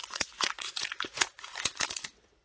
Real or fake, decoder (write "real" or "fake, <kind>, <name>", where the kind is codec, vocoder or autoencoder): fake, vocoder, Vocos